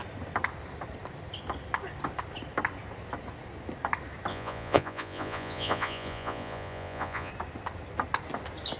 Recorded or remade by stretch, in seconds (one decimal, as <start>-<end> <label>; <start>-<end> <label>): 0.0-4.3 recorded; 4.3-7.3 remade; 7.3-8.8 recorded